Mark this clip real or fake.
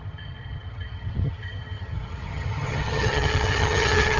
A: fake